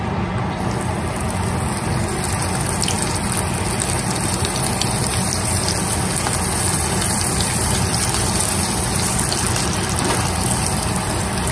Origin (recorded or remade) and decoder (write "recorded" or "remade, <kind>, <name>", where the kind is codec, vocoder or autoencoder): recorded